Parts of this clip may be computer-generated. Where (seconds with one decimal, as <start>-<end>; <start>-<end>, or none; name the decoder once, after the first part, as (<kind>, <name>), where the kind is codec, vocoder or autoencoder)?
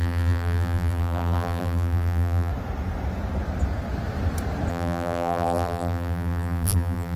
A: 0.0-2.5 (vocoder, BigVGAN v2); 4.7-7.2